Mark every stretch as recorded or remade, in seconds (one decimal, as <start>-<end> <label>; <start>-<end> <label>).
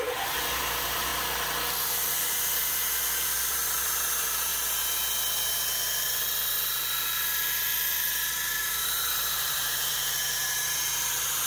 0.0-1.1 remade; 1.1-2.7 recorded; 2.7-4.5 remade; 4.5-8.6 recorded; 8.6-11.5 remade